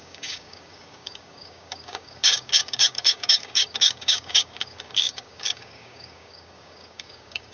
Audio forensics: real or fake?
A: fake